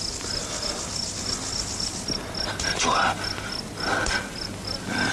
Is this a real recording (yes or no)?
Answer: yes